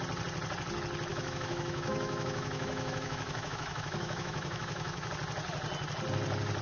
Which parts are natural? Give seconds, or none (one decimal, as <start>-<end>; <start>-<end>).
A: 0.0-1.1; 5.1-6.6